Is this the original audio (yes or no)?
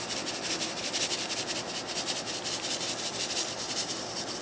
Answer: yes